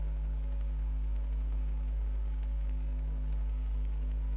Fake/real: fake